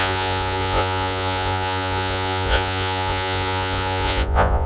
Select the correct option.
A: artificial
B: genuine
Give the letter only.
A